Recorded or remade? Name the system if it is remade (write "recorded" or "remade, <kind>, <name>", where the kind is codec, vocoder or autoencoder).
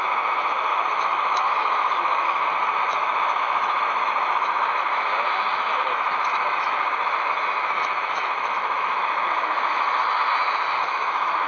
remade, autoencoder, DAC-VAE